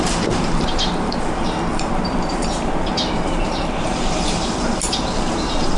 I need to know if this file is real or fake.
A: fake